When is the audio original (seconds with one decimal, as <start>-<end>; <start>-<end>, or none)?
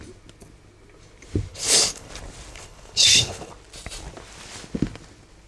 0.0-1.5; 2.1-2.5; 3.5-5.5